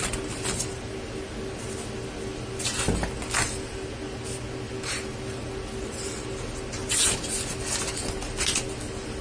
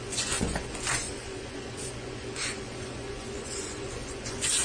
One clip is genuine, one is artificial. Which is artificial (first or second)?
second